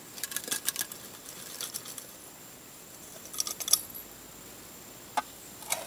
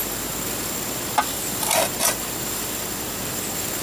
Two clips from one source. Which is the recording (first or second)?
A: first